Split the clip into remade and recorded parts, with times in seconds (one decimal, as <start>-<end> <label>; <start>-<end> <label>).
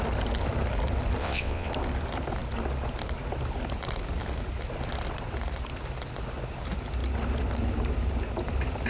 0.0-1.2 recorded; 1.2-1.7 remade; 1.7-8.9 recorded